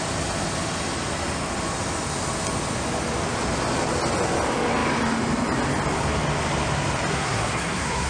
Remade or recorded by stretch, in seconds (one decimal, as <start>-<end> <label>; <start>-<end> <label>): 0.0-7.1 recorded; 7.1-8.1 remade